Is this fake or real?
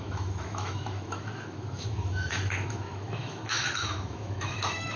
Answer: fake